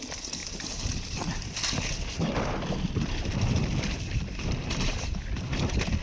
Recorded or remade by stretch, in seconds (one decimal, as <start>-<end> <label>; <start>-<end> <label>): 0.0-6.0 remade